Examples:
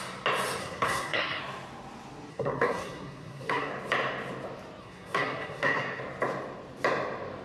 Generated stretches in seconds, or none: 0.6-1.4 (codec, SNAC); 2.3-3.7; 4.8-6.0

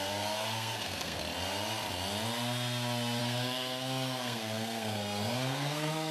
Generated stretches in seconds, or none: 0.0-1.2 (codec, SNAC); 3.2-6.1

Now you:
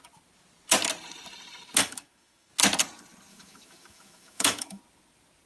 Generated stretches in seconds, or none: 1.8-2.5 (autoencoder, DAC-VAE); 3.3-4.8